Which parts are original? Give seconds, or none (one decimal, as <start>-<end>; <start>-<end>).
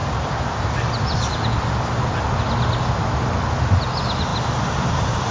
0.0-5.3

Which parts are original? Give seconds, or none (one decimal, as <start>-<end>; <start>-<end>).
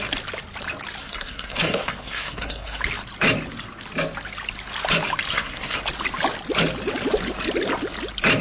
0.0-1.0; 2.8-5.3; 5.8-8.4